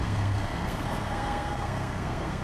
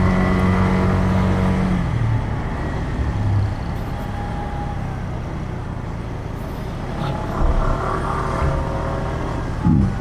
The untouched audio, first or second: second